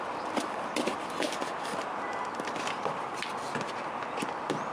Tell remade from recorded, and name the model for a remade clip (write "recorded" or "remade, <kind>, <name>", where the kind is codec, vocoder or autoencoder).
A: recorded